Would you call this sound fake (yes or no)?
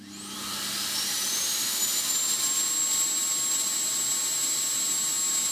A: no